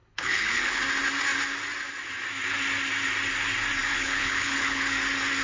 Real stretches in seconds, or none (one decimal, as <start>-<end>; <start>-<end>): 0.8-3.9; 4.8-5.4